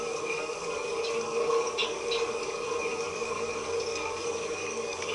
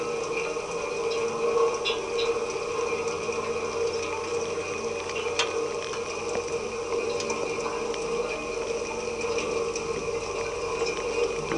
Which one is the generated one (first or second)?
first